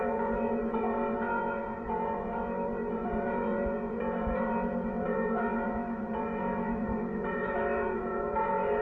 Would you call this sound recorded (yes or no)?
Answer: no